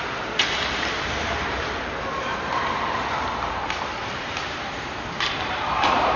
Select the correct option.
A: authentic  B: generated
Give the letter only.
B